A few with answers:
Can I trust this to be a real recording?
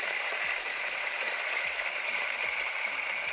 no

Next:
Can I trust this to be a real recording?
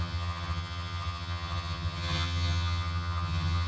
no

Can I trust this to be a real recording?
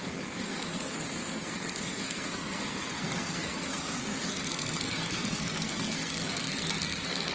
no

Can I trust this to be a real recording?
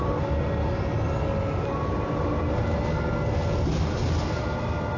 yes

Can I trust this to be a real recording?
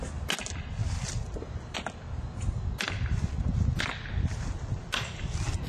yes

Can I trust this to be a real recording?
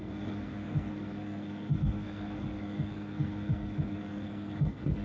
no